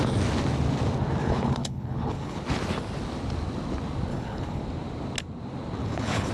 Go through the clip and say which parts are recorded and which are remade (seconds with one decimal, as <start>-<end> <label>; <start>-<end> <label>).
0.0-1.2 recorded; 1.2-2.4 remade; 2.4-4.1 recorded; 4.1-4.6 remade; 4.6-5.8 recorded; 5.8-6.3 remade